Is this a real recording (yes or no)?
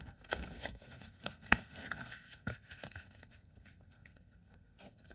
no